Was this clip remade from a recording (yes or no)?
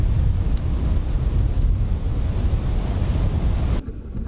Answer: no